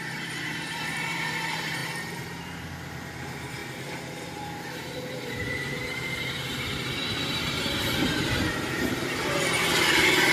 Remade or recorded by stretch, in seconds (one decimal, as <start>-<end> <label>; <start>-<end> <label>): 0.0-10.3 remade